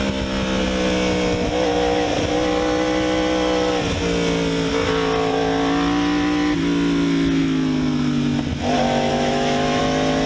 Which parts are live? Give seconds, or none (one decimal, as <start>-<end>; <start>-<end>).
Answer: 0.0-9.1; 9.8-10.3